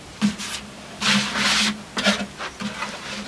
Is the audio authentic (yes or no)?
yes